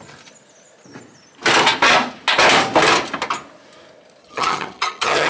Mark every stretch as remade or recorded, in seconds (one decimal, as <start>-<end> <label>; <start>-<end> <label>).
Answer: 0.0-4.2 recorded; 4.2-5.3 remade